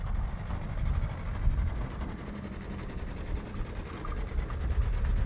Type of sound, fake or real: real